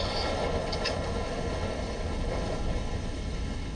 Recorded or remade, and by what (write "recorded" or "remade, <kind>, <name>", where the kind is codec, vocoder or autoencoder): remade, codec, HILCodec